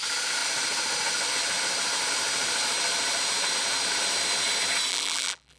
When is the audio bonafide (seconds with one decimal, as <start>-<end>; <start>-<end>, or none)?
0.0-4.9

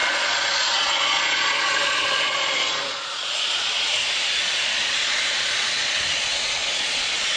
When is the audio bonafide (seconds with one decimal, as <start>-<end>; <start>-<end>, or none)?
none

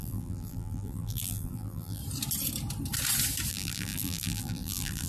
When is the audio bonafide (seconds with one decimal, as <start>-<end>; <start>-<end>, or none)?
2.0-3.5

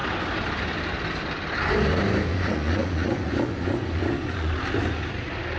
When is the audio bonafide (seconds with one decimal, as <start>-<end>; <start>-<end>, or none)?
0.0-2.3; 4.5-5.6

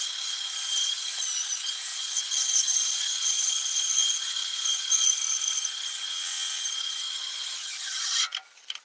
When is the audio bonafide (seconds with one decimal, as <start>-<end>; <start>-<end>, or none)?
0.0-6.1; 6.6-8.8